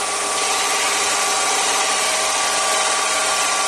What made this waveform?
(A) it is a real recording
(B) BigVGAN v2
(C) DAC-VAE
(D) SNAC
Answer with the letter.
A